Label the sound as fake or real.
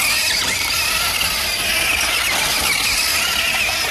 real